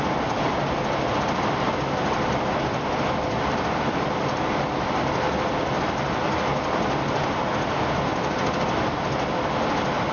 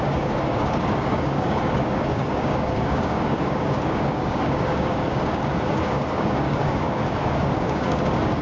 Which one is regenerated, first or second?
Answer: second